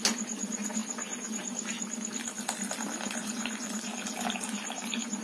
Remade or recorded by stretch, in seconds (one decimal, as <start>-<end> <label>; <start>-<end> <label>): 0.0-3.2 recorded; 3.2-3.8 remade; 3.8-5.2 recorded